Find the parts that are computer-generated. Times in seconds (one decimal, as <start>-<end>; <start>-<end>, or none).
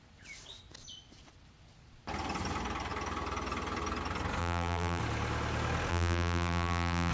4.4-5.0; 5.9-7.1